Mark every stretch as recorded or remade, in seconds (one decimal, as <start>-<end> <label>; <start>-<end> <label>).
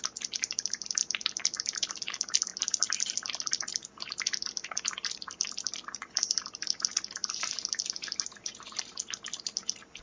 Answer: 0.0-1.0 recorded; 1.0-1.9 remade; 1.9-2.5 recorded; 2.5-6.8 remade; 6.8-10.0 recorded